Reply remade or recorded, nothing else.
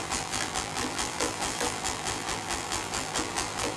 remade